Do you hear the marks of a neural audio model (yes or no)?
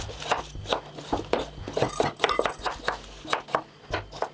no